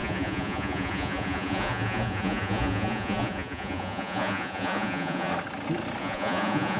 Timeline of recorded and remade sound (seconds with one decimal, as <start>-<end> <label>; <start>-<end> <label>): 0.0-5.3 remade; 5.3-6.0 recorded; 6.0-6.8 remade